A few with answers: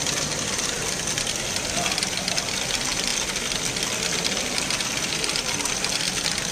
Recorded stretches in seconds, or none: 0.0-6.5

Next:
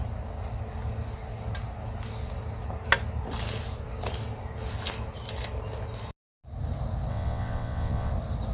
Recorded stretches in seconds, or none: 0.0-7.1; 8.1-8.5